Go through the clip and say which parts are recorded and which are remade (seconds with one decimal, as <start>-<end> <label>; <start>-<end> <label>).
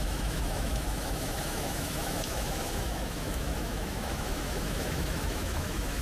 0.0-6.0 remade